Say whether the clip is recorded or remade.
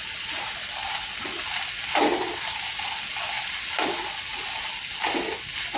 recorded